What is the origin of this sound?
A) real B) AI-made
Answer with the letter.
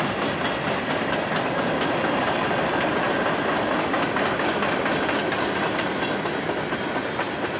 A